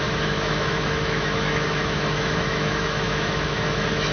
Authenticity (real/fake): fake